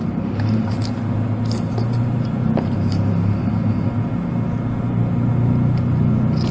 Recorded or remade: recorded